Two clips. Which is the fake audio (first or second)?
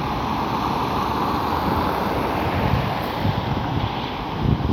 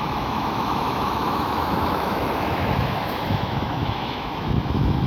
second